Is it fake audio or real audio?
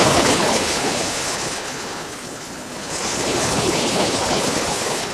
fake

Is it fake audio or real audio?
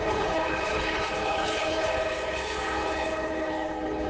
fake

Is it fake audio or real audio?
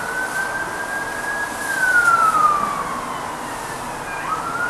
real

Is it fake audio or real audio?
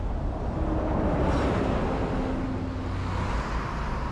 real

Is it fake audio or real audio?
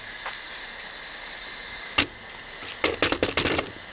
real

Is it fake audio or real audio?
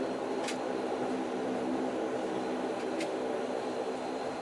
real